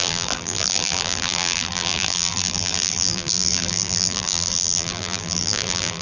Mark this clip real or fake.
fake